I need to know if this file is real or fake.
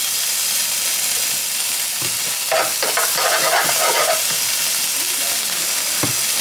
real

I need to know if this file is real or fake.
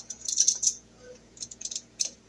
fake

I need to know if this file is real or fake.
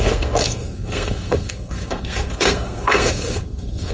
fake